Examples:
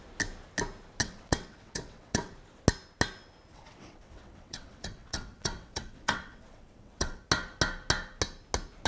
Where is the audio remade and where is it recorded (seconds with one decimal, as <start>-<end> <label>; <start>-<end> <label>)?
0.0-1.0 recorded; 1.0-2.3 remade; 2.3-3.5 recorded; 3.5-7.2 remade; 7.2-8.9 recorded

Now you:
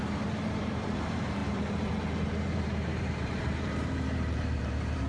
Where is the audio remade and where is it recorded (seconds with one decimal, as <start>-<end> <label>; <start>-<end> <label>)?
0.0-5.1 remade

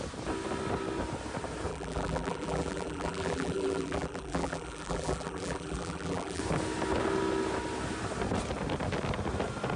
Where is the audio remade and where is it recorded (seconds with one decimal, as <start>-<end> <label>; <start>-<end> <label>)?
0.0-1.7 recorded; 1.7-6.4 remade; 6.4-9.8 recorded